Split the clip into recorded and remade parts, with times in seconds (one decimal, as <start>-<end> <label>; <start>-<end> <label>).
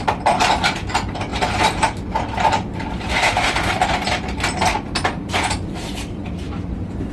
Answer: 0.0-3.1 recorded; 3.1-3.7 remade; 3.7-7.1 recorded